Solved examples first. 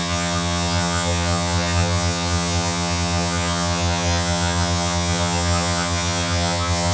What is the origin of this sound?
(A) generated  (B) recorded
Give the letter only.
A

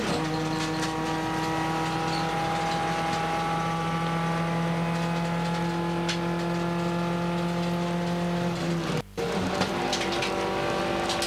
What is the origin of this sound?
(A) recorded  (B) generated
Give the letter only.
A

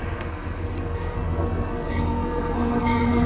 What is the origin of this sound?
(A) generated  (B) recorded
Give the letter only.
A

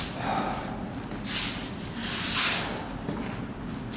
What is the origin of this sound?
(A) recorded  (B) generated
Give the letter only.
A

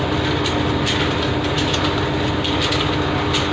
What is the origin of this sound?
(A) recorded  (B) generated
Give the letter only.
A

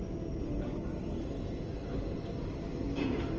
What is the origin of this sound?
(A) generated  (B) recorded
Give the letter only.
B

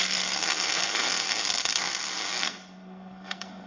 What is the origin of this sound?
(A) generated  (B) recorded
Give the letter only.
A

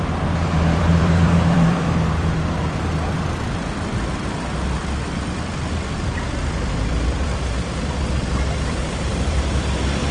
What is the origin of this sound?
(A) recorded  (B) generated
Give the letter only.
B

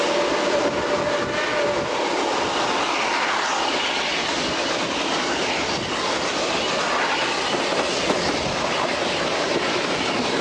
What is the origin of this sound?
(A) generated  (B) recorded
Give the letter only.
B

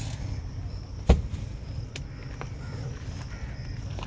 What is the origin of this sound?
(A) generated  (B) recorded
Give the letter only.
B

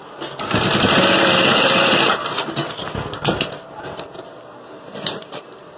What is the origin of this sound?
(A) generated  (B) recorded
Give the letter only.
B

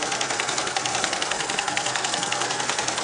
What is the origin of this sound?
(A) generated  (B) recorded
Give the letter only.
A